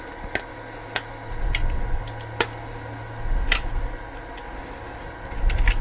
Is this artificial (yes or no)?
no